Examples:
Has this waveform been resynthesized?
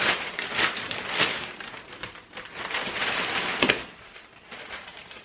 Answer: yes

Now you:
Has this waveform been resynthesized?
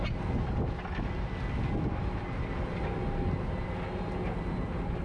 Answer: no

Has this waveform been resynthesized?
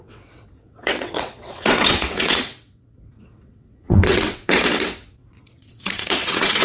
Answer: yes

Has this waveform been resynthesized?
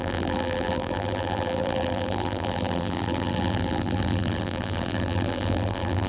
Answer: yes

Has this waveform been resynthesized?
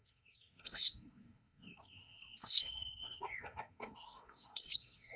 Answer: yes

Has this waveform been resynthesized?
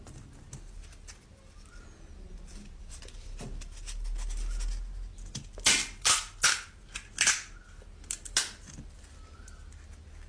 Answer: no